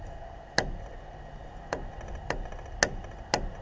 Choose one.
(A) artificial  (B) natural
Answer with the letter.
B